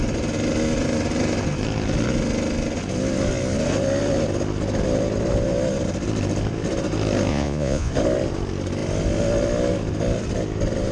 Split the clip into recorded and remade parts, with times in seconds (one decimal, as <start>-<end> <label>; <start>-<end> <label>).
0.0-7.3 recorded; 7.3-7.9 remade; 7.9-10.9 recorded